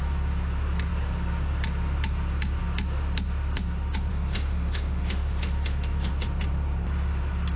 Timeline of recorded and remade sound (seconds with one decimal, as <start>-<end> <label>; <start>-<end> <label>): 0.0-4.1 recorded; 4.1-6.1 remade; 6.1-7.6 recorded